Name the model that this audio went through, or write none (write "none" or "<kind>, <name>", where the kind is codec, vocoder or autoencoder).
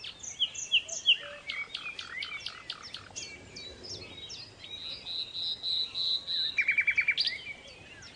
none